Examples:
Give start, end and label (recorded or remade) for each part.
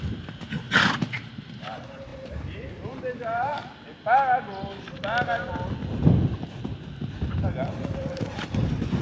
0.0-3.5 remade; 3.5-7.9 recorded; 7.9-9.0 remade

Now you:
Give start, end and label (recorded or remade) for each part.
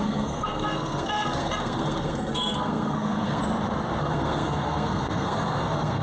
0.0-3.4 remade; 3.4-4.0 recorded; 4.0-6.0 remade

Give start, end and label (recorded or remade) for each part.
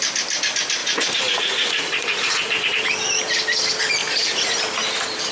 0.0-0.8 recorded; 0.8-2.7 remade; 2.7-4.0 recorded; 4.0-4.6 remade; 4.6-5.3 recorded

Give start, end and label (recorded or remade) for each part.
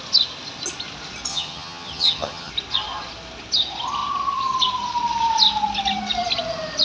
0.0-1.3 recorded; 1.3-2.5 remade; 2.5-6.8 recorded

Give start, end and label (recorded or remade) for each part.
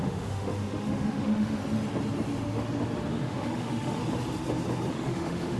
0.0-1.6 remade; 1.6-3.1 recorded; 3.1-4.0 remade; 4.0-4.9 recorded; 4.9-5.6 remade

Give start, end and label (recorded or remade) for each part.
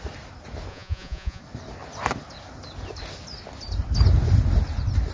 0.0-0.7 recorded; 0.7-1.4 remade; 1.4-5.1 recorded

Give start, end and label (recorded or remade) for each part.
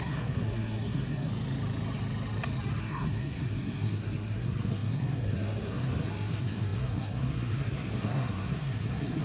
0.0-1.3 remade; 1.3-2.8 recorded; 2.8-9.2 remade